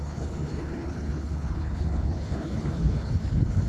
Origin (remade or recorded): remade